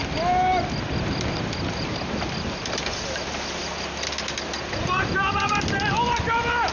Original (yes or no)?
yes